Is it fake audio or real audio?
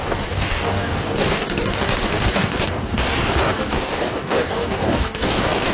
fake